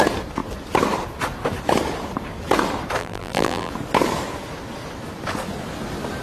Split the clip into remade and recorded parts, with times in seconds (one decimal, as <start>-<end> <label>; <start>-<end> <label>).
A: 0.0-3.0 recorded; 3.0-3.7 remade; 3.7-6.2 recorded

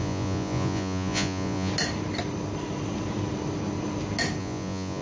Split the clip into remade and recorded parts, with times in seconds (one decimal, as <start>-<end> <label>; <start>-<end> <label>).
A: 0.0-1.7 remade; 1.7-4.4 recorded; 4.4-5.0 remade

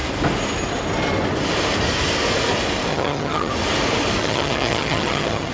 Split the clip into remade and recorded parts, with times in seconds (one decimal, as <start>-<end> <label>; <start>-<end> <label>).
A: 0.0-2.9 recorded; 2.9-3.5 remade; 3.5-4.2 recorded; 4.2-5.5 remade

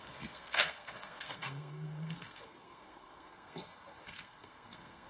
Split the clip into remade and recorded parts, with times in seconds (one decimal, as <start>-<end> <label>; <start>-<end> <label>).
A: 0.0-5.1 remade